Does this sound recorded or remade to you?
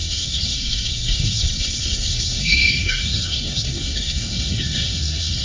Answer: remade